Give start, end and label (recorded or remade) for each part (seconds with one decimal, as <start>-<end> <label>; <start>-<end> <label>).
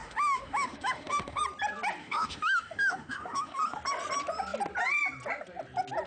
0.0-1.4 remade; 1.4-2.0 recorded; 2.0-3.6 remade; 3.6-6.1 recorded